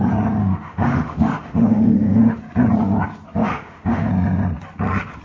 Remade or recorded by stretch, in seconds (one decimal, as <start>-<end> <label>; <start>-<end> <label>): 0.0-0.4 recorded; 0.4-2.4 remade; 2.4-3.4 recorded; 3.4-4.1 remade; 4.1-5.2 recorded